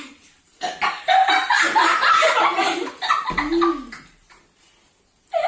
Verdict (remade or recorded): recorded